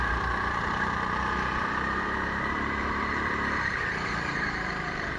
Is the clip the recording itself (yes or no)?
no